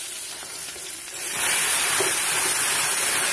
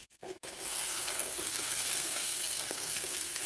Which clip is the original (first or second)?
first